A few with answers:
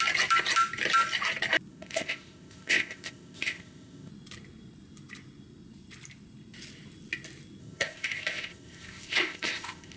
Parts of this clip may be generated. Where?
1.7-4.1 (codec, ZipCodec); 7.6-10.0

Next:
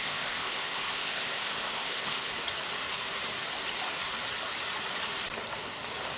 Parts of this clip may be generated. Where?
0.0-2.3 (codec, ZipCodec)

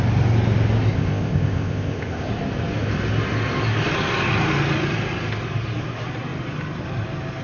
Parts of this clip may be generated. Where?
0.9-2.3 (codec, ZipCodec)